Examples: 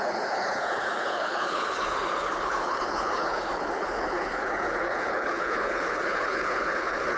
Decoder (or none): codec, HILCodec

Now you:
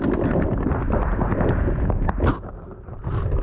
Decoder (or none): none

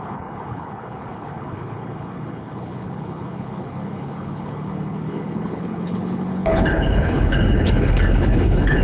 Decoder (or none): codec, HILCodec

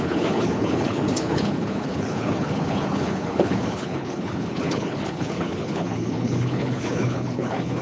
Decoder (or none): codec, HILCodec